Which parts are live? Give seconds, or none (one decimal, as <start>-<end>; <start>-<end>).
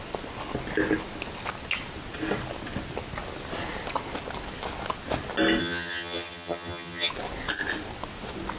0.0-5.6; 7.1-8.6